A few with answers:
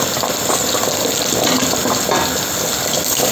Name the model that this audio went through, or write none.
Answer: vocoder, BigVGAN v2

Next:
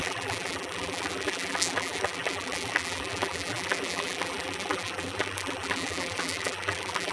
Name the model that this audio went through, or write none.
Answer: vocoder, BigVGAN v2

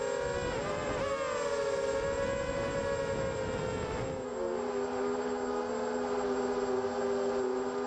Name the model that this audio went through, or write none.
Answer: none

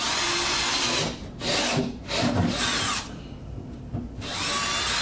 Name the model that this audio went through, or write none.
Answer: none